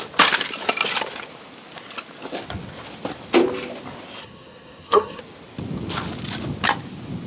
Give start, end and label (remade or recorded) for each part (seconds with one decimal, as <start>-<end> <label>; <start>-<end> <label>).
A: 0.0-4.2 recorded; 4.2-5.2 remade; 5.2-7.3 recorded